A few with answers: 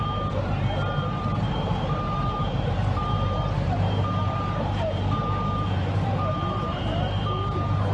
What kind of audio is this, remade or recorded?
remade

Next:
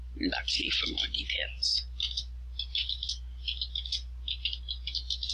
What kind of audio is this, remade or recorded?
recorded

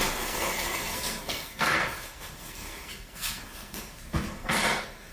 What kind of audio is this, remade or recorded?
remade